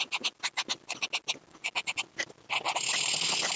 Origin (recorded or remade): recorded